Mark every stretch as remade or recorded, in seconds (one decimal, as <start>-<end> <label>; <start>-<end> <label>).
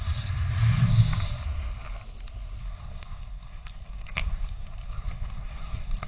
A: 0.0-2.6 recorded; 2.6-6.1 remade